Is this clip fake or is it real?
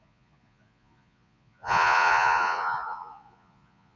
fake